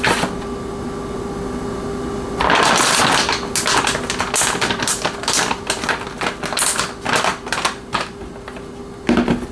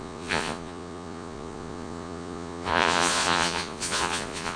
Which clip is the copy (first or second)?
second